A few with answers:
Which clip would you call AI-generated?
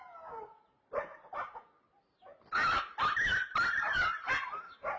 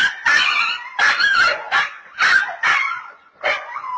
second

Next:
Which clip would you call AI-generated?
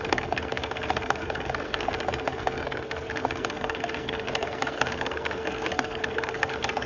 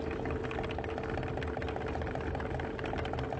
first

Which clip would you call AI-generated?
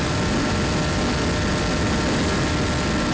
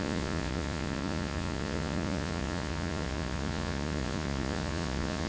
second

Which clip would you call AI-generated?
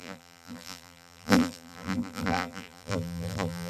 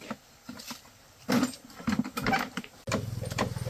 first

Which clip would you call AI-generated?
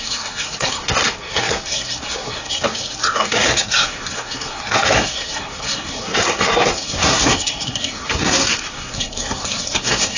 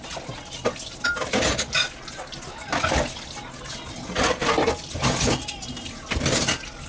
first